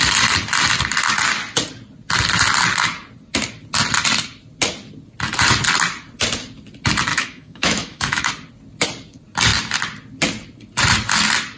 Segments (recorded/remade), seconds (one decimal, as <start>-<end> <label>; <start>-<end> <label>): 0.0-7.1 recorded; 7.1-8.3 remade; 8.3-11.6 recorded